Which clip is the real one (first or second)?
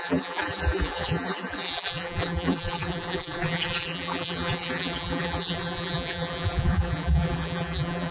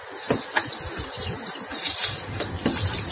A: second